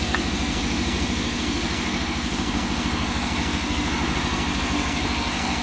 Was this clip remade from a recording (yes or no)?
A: yes